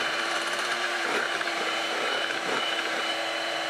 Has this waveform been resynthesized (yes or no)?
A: yes